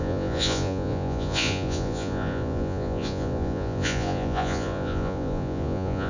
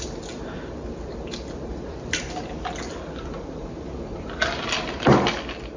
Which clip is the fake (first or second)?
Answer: first